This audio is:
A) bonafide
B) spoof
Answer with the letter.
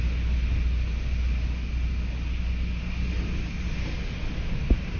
A